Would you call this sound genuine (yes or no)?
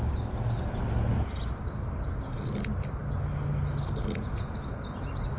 yes